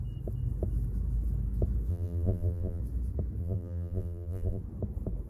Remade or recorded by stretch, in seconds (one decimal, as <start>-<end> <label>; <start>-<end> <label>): 0.0-1.9 recorded; 1.9-2.8 remade; 2.8-3.4 recorded; 3.4-4.6 remade; 4.6-5.3 recorded